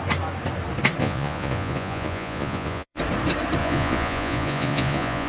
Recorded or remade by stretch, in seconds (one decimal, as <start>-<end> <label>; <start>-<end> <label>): 0.0-1.0 recorded; 1.0-3.0 remade; 3.0-3.6 recorded; 3.6-5.3 remade